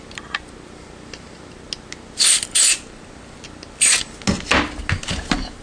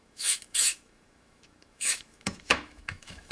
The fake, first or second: second